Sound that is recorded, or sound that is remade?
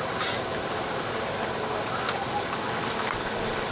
recorded